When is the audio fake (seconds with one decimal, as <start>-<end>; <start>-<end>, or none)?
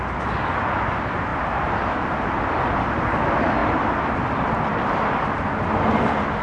1.3-2.6; 3.6-4.6